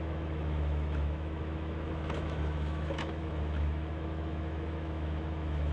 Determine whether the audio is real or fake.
fake